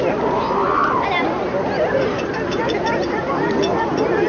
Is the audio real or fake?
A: fake